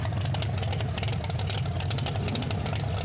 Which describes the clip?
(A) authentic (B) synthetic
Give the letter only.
A